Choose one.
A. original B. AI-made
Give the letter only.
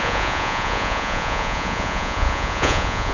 B